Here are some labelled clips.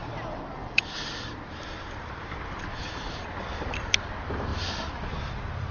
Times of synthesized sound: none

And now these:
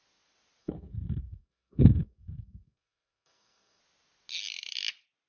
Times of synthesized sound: 0.6-3.8 (codec, SNAC)